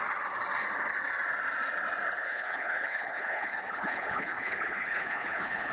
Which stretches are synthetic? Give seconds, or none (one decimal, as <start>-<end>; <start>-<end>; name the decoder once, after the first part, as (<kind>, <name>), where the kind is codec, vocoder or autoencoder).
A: 2.2-5.7 (codec, HILCodec)

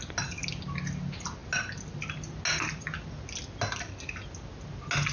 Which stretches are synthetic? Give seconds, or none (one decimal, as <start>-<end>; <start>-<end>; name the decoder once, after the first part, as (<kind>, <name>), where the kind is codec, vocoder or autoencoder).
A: none

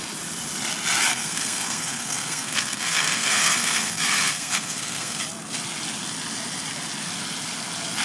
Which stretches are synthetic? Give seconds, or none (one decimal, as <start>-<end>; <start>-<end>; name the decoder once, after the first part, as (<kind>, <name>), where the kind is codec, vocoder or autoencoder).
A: 1.1-5.2 (codec, SNAC)

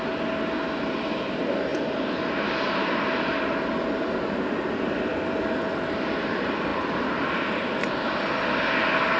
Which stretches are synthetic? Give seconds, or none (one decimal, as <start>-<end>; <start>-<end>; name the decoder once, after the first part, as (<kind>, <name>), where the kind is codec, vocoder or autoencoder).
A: none

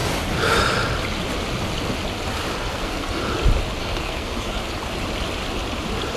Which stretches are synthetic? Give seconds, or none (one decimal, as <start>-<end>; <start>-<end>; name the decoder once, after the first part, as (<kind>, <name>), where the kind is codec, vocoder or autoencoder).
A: 2.7-3.2 (codec, SNAC); 3.8-4.6

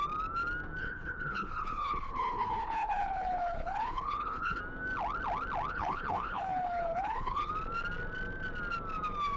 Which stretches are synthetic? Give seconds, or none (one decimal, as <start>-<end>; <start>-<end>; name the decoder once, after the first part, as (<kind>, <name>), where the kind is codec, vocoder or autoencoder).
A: 0.8-4.6 (codec, HILCodec); 5.7-7.5

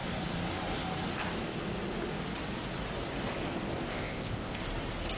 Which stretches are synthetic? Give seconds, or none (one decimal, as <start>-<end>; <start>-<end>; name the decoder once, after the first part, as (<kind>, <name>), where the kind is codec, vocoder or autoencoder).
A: 3.9-4.6 (codec, ZipCodec)

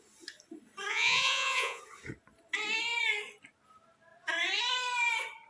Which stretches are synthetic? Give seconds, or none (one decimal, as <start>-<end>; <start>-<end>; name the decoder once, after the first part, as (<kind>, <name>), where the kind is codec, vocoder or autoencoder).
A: 0.9-1.8 (vocoder, Vocos)